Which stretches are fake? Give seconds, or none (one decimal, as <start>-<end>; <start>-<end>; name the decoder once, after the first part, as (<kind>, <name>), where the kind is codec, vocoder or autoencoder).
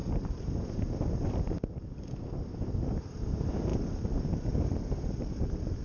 none